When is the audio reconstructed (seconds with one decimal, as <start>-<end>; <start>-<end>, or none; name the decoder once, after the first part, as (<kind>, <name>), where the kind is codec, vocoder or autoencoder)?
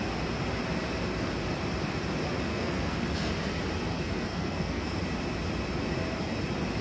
2.5-3.3 (codec, SNAC); 3.9-5.0